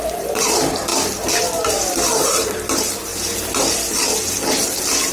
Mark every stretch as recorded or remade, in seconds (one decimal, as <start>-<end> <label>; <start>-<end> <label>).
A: 0.0-5.1 recorded